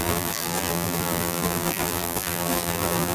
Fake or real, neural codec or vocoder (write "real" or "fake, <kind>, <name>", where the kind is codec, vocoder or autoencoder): fake, vocoder, BigVGAN v2